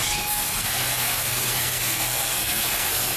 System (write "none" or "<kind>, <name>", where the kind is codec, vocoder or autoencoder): codec, SNAC